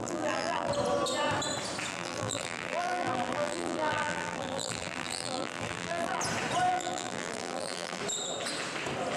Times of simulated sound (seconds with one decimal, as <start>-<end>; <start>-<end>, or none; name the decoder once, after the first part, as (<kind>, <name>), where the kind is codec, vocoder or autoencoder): 0.0-0.7 (vocoder, BigVGAN v2); 1.9-6.2; 6.7-8.0